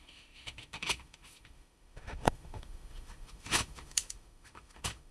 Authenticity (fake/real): fake